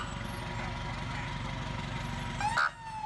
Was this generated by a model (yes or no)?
no